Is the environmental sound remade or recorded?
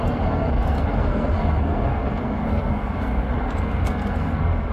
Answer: remade